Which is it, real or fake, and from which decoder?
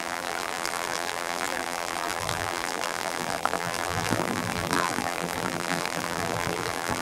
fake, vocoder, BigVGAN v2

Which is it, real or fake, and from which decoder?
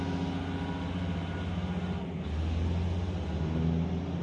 real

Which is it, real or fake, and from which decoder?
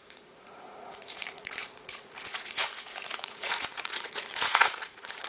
fake, vocoder, Vocos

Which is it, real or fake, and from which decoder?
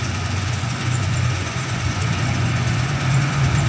fake, vocoder, Vocos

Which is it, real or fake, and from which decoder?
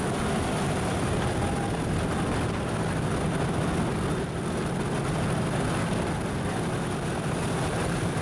real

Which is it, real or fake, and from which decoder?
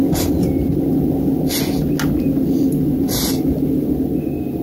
real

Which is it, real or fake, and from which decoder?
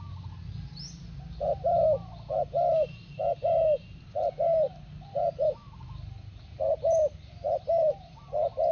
real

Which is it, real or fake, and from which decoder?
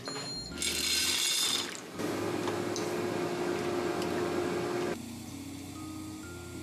real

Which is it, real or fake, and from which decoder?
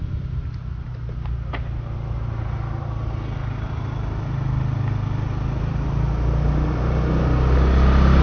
real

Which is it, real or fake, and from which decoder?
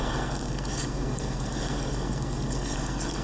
fake, codec, SNAC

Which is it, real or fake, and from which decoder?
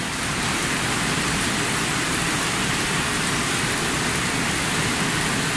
real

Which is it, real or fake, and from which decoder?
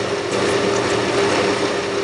real